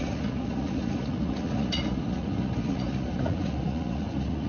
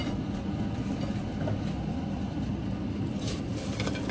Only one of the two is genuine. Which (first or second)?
second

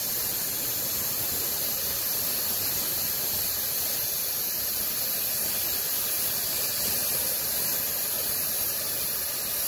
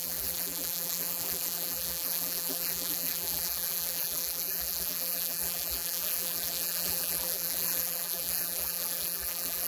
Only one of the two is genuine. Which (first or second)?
first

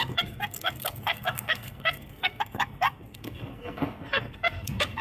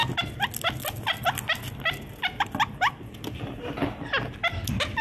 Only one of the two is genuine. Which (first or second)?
second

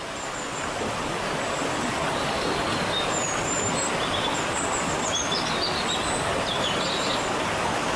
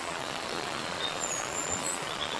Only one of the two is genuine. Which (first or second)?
first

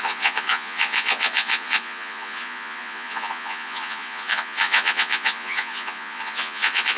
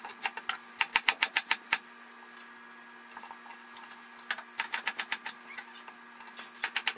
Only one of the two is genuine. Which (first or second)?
second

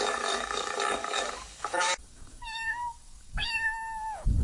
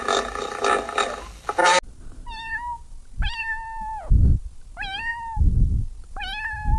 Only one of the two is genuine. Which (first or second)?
second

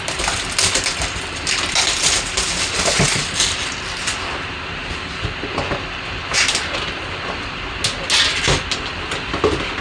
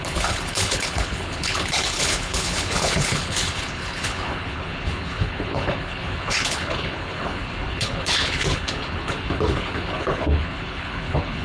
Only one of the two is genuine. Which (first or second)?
first